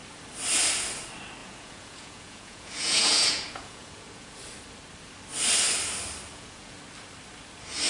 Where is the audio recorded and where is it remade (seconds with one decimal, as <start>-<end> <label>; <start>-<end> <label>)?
0.0-1.4 recorded; 1.4-4.4 remade; 4.4-6.3 recorded; 6.3-6.8 remade; 6.8-7.9 recorded

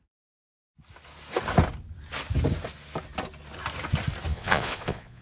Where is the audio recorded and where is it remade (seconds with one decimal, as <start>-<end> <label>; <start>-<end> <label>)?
0.0-4.3 recorded; 4.3-5.2 remade

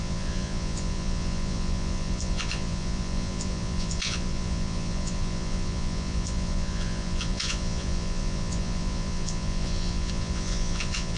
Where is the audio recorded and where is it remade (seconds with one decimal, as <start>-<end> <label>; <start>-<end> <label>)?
0.0-11.2 remade

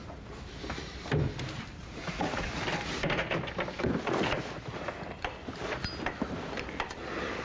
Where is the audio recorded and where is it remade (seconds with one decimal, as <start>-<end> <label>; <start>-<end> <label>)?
0.0-1.8 recorded; 1.8-2.6 remade; 2.6-7.4 recorded

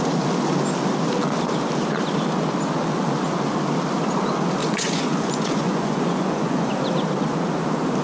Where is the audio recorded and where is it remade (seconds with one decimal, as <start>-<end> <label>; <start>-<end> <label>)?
0.0-4.6 recorded; 4.6-6.7 remade; 6.7-8.0 recorded

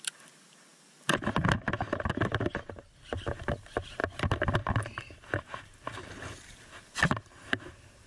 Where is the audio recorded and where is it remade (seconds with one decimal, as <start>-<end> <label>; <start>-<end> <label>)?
0.0-8.1 recorded

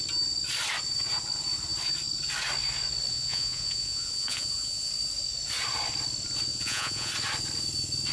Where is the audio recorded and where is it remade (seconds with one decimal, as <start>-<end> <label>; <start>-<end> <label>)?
0.0-3.1 recorded; 3.1-4.9 remade; 4.9-6.5 recorded; 6.5-7.1 remade; 7.1-8.1 recorded

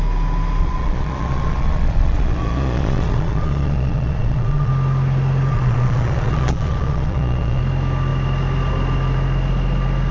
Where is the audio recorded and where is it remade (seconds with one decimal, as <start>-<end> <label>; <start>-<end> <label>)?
0.0-0.6 recorded; 0.6-4.7 remade; 4.7-5.5 recorded; 5.5-7.6 remade; 7.6-10.1 recorded